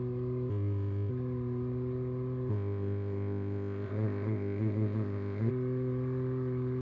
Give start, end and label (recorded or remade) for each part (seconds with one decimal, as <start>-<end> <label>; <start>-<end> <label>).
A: 0.0-0.5 recorded; 0.5-1.1 remade; 1.1-2.5 recorded; 2.5-5.5 remade; 5.5-6.8 recorded